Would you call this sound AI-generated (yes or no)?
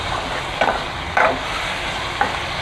no